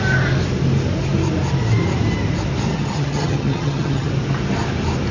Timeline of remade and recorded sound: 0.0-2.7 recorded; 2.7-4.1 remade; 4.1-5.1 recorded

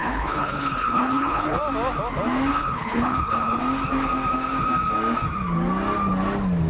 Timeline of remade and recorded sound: 0.0-1.6 remade; 1.6-2.5 recorded; 2.5-3.6 remade; 3.6-6.7 recorded

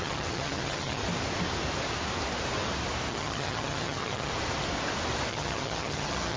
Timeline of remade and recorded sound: 0.0-1.0 remade; 1.0-3.1 recorded; 3.1-4.3 remade; 4.3-5.3 recorded; 5.3-6.4 remade